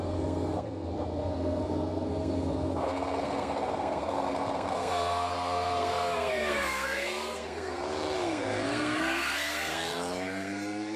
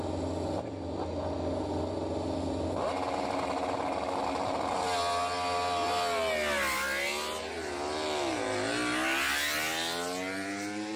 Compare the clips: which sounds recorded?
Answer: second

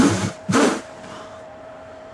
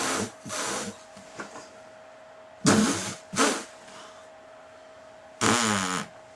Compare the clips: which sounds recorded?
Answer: second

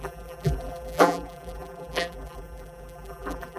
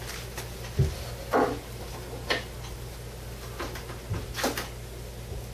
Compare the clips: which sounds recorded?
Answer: second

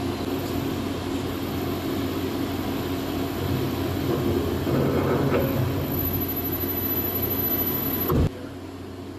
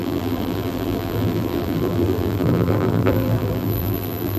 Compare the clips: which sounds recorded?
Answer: first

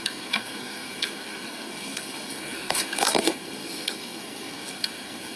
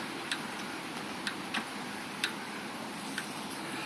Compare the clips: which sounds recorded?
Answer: second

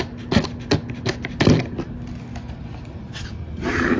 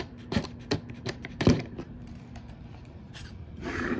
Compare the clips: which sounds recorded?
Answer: first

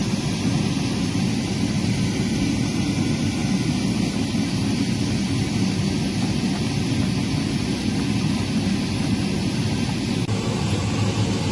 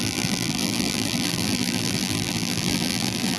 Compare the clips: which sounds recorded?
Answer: first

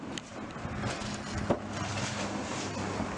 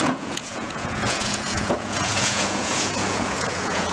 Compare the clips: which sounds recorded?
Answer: first